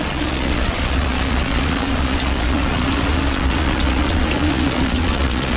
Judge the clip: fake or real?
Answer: fake